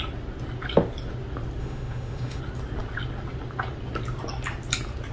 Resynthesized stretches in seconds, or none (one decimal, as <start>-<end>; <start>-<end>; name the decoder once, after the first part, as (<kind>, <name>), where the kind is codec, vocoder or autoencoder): 1.6-2.4 (autoencoder, DAC-VAE)